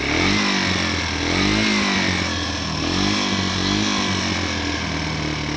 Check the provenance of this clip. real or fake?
real